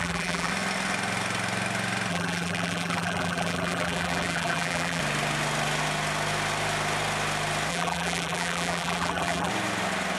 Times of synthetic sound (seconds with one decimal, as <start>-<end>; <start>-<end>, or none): 0.0-0.5; 2.1-5.0; 7.7-9.5